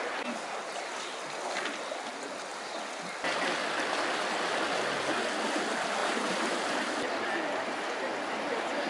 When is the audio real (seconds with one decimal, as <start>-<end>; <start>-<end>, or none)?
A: 0.0-6.0; 6.9-8.9

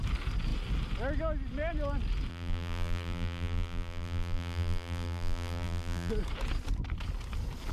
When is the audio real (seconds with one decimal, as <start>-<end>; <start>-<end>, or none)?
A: 0.0-2.3; 6.1-7.7

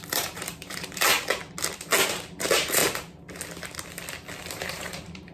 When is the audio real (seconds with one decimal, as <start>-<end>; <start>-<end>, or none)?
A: 1.1-2.1; 2.8-4.6

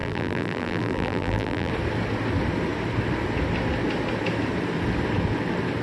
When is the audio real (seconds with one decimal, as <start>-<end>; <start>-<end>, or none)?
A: 1.7-5.8

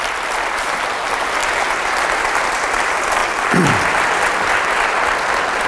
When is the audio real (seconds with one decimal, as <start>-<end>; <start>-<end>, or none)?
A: 0.0-5.7

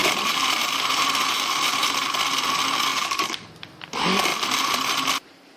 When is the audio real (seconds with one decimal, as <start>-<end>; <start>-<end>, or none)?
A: 1.8-4.3; 5.0-5.6

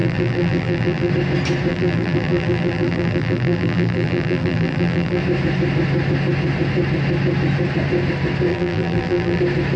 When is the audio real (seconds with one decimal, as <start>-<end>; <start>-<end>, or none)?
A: 1.1-1.7; 5.2-8.5; 9.4-9.8

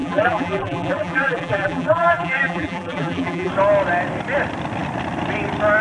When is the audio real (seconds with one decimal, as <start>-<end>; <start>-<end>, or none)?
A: 3.5-5.8